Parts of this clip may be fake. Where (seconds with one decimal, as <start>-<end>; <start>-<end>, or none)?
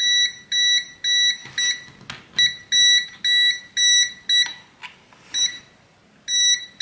none